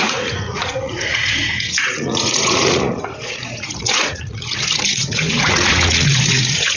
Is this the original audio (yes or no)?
no